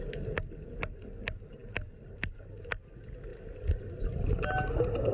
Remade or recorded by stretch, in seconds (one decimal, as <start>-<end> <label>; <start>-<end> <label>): 0.0-5.1 recorded

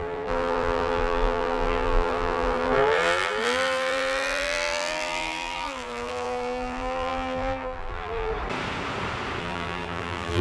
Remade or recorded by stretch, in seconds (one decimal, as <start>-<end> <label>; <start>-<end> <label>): 0.0-8.3 remade; 8.3-9.4 recorded; 9.4-10.4 remade

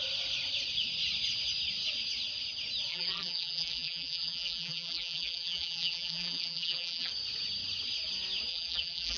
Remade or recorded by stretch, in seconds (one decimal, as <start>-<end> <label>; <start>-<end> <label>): 0.0-2.9 recorded; 2.9-7.1 remade; 7.1-8.5 recorded; 8.5-9.2 remade

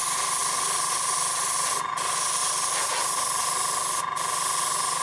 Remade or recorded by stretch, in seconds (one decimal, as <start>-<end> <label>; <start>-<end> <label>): 0.0-0.4 recorded; 0.4-1.9 remade; 1.9-2.4 recorded; 2.4-4.0 remade; 4.0-5.0 recorded

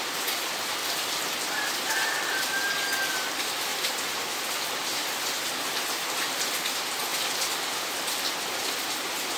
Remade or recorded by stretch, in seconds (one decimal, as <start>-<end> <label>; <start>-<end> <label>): 0.0-9.4 recorded

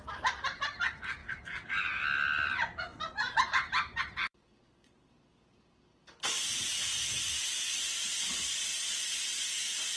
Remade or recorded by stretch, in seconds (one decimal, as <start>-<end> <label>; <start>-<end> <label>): 0.0-1.2 recorded; 1.2-1.7 remade; 1.7-2.9 recorded; 2.9-5.0 remade; 5.0-10.0 recorded

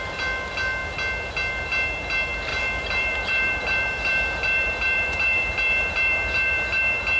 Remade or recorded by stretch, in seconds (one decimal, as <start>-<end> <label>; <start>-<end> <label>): 0.0-2.5 recorded; 2.5-6.8 remade; 6.8-7.2 recorded

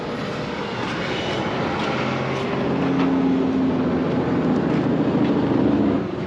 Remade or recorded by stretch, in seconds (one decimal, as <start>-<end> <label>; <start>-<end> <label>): 0.0-4.0 recorded; 4.0-5.6 remade; 5.6-6.3 recorded